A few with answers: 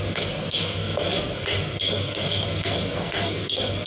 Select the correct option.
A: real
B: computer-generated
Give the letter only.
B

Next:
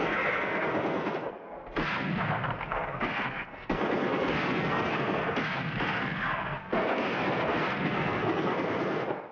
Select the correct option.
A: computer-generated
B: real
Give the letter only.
A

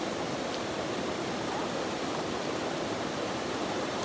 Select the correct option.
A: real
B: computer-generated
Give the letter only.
B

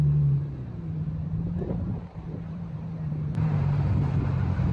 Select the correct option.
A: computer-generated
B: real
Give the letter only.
A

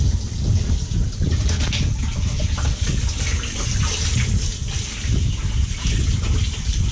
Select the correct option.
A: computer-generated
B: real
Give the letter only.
B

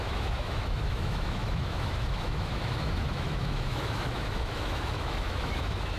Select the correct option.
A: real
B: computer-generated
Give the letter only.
B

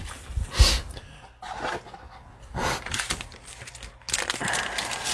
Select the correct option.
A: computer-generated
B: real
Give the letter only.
B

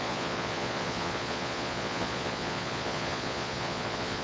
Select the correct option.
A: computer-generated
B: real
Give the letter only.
A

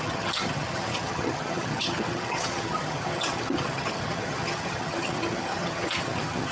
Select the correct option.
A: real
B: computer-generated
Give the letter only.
B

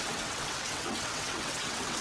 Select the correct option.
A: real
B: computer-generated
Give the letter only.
B